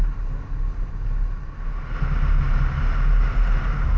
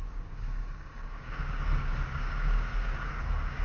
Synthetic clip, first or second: second